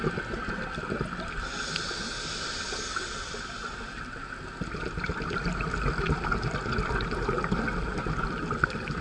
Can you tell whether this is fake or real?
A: real